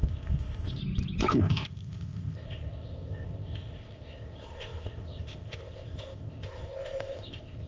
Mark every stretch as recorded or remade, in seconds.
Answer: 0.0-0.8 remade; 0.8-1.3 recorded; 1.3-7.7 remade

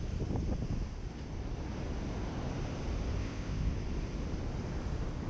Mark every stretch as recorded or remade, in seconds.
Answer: 0.0-3.2 recorded; 3.2-3.7 remade; 3.7-5.3 recorded

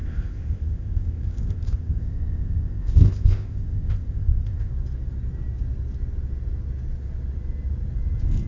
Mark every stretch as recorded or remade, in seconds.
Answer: 0.0-4.7 remade; 4.7-8.5 recorded

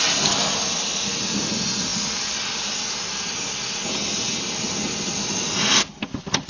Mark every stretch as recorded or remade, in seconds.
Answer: 0.0-6.5 recorded

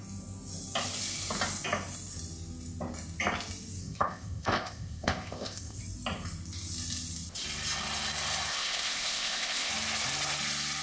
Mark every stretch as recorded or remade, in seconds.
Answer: 0.0-3.8 recorded; 3.8-5.8 remade; 5.8-8.5 recorded; 8.5-9.7 remade; 9.7-10.8 recorded

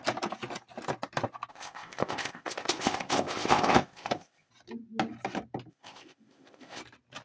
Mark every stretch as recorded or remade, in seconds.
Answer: 0.0-1.5 recorded; 1.5-4.5 remade; 4.5-5.7 recorded; 5.7-6.8 remade; 6.8-7.2 recorded

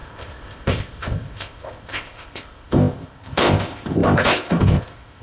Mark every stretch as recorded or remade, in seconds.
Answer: 0.0-5.2 remade